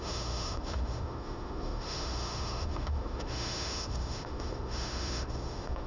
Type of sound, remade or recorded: remade